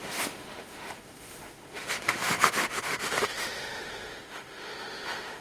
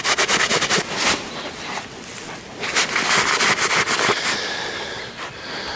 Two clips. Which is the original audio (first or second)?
second